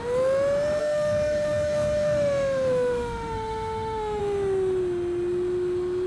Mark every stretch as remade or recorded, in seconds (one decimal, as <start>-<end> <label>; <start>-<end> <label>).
0.0-0.8 recorded; 0.8-4.2 remade; 4.2-6.1 recorded